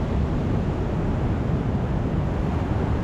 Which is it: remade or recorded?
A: recorded